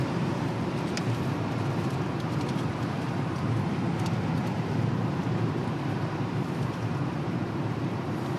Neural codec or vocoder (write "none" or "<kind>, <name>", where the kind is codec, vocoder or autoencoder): vocoder, BigVGAN v2